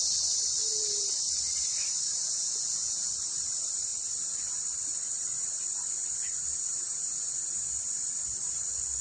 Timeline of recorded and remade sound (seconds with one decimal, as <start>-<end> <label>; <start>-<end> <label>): 0.0-2.2 recorded; 2.2-3.1 remade; 3.1-6.5 recorded; 6.5-7.4 remade; 7.4-9.0 recorded